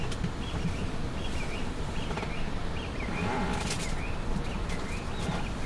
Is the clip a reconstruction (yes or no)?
no